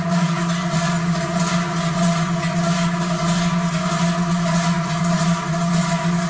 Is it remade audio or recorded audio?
recorded